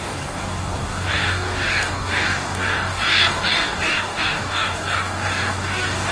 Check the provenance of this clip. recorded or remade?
remade